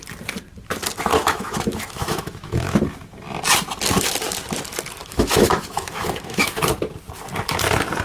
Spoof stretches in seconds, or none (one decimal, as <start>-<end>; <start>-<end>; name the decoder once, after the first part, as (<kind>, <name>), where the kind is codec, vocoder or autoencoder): 1.1-2.8 (autoencoder, DAC-VAE); 5.0-6.6